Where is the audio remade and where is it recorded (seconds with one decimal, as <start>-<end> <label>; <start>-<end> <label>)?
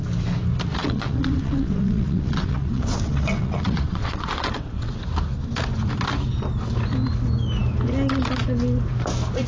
0.0-0.8 recorded; 0.8-5.0 remade; 5.0-9.5 recorded